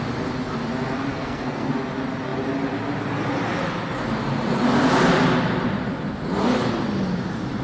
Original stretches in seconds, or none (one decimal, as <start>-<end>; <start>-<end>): 0.0-1.1; 1.7-7.6